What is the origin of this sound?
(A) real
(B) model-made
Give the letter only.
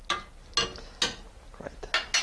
A